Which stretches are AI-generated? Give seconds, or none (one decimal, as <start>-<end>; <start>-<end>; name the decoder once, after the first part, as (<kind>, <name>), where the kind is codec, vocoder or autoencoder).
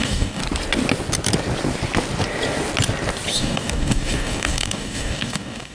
0.0-0.4 (codec, DAC); 3.3-5.7